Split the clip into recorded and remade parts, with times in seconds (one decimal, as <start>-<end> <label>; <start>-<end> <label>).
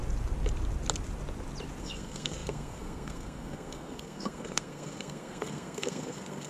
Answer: 0.0-1.8 recorded; 1.8-6.5 remade